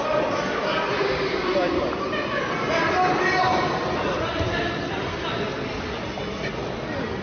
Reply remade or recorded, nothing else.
recorded